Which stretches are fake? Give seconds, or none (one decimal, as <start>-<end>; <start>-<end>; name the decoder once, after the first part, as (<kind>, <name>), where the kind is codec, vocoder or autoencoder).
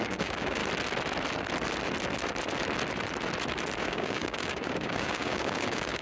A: 0.0-0.6 (codec, DAC); 3.8-6.0